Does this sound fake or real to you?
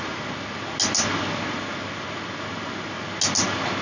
real